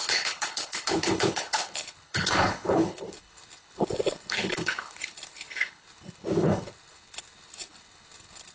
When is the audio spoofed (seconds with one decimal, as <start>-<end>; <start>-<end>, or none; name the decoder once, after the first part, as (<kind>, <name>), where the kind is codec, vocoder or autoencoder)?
0.0-8.5 (codec, HILCodec)